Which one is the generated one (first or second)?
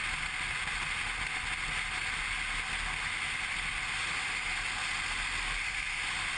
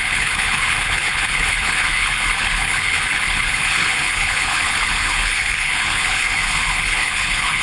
second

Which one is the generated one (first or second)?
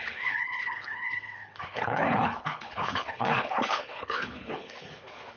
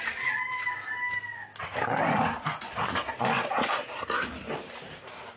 first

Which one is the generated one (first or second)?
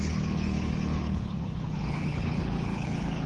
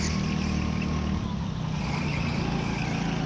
first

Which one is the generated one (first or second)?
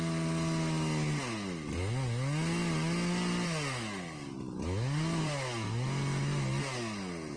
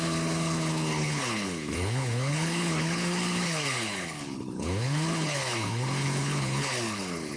second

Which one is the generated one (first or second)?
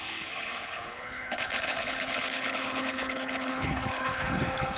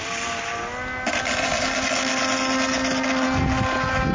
first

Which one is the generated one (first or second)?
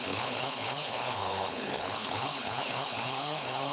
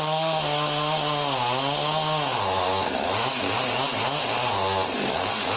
first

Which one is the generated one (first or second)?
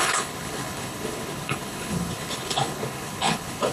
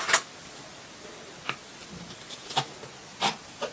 first